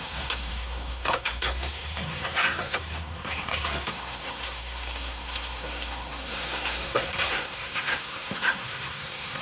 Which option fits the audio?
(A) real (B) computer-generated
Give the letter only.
B